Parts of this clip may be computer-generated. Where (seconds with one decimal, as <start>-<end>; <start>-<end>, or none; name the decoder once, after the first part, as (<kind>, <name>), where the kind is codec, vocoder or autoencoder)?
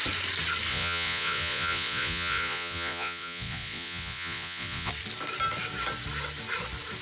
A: 0.7-4.9 (vocoder, Vocos)